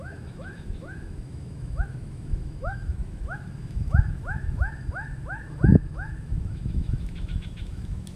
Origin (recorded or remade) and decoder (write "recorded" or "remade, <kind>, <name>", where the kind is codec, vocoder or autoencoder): remade, autoencoder, DAC-VAE